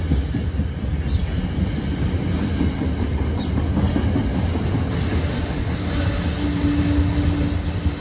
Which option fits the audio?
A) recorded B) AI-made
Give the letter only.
A